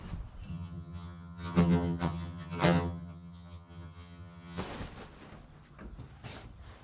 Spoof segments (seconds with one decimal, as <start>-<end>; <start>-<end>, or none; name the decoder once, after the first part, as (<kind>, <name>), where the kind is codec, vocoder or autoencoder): 0.5-4.6 (vocoder, HiFi-GAN)